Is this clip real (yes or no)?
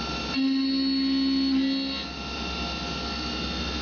yes